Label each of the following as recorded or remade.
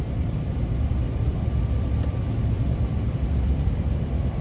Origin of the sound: recorded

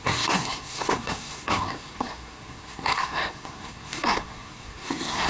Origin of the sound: remade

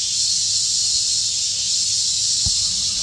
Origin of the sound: recorded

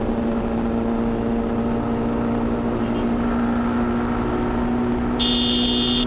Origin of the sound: recorded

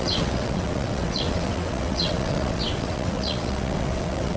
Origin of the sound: remade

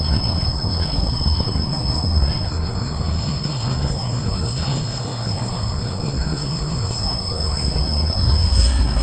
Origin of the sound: remade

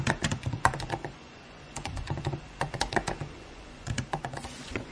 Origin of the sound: remade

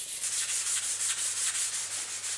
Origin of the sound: recorded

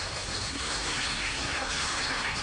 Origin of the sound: remade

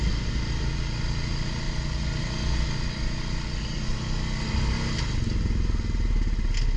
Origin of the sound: recorded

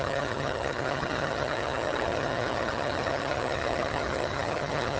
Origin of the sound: remade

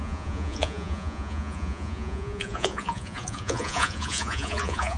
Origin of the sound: remade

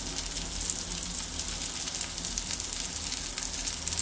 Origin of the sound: recorded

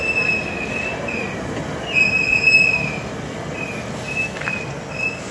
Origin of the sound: recorded